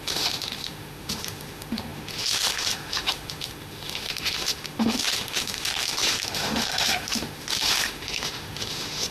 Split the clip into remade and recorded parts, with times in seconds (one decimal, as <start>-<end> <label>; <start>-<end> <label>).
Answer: 0.0-9.1 remade